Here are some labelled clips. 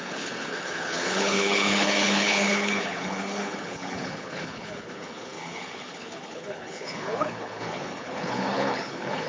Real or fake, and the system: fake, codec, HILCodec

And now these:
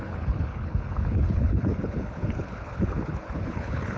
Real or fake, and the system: fake, codec, HILCodec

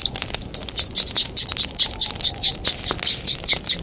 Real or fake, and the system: real